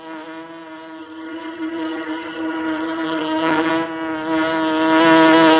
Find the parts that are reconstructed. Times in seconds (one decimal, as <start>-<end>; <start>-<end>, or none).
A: 1.0-3.7